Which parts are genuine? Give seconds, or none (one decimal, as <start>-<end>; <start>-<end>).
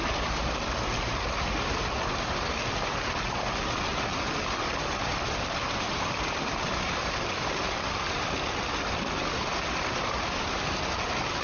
0.0-11.4